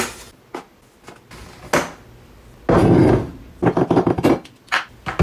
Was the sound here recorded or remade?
recorded